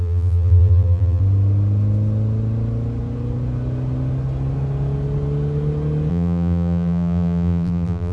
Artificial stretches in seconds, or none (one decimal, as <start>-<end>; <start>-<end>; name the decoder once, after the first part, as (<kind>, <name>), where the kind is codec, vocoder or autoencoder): 0.0-1.2 (vocoder, BigVGAN v2); 6.1-8.1